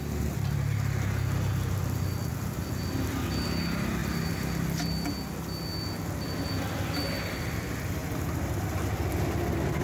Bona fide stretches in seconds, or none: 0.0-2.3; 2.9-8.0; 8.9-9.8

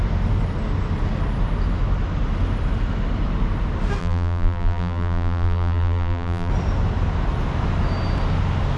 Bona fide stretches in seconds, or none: 0.0-4.0; 6.5-8.8

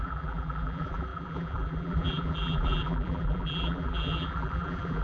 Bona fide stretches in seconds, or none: none

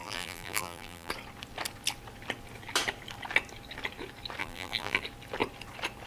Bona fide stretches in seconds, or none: 1.1-4.4; 5.0-6.1

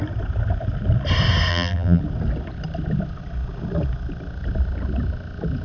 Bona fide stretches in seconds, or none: 0.0-1.5; 2.0-5.6

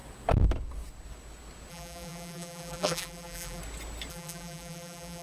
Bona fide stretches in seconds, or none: 0.0-1.7; 3.6-4.1